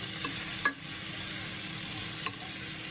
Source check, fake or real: real